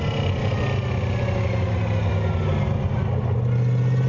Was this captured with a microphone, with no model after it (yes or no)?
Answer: yes